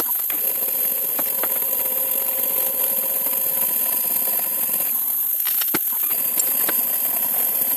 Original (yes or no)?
yes